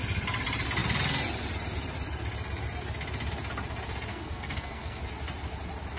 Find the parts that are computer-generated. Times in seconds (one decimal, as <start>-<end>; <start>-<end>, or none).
4.1-5.0